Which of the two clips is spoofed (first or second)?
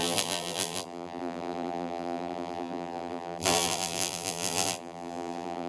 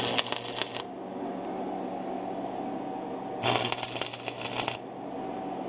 first